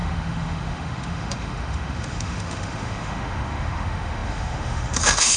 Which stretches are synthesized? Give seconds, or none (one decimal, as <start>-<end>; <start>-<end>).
0.0-5.4